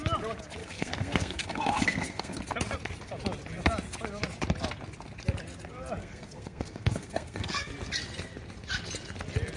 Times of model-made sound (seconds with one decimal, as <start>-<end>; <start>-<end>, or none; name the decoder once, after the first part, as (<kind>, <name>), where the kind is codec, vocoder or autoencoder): 0.6-2.4 (codec, SNAC); 6.0-7.7